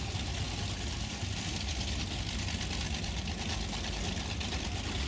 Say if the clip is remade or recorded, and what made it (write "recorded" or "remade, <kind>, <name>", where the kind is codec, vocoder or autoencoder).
recorded